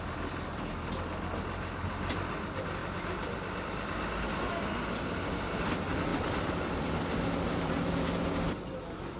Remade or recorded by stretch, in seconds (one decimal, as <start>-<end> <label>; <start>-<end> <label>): 0.0-2.8 recorded; 2.8-3.7 remade; 3.7-6.1 recorded; 6.1-7.7 remade; 7.7-9.2 recorded